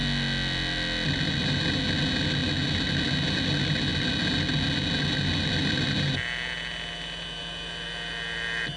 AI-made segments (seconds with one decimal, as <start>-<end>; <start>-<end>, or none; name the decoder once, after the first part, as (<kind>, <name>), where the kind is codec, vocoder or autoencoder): none